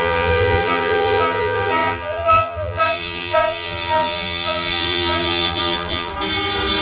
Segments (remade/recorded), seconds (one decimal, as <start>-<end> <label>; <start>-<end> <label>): 0.0-6.1 remade; 6.1-6.8 recorded